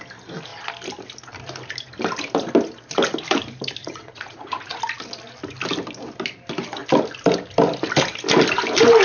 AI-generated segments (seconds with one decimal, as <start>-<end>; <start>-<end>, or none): 3.8-4.8

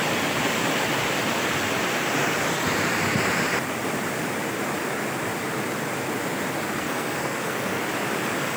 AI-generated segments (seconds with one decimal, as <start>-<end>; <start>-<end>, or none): 6.7-7.8

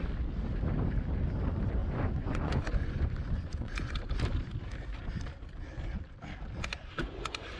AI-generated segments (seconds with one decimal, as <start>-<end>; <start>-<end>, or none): 1.8-3.9; 6.7-7.6